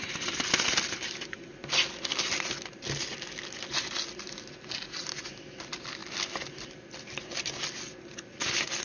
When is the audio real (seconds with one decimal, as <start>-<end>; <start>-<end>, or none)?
0.0-8.8